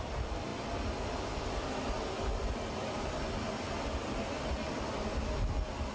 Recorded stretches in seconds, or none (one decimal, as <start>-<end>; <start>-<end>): 0.0-5.9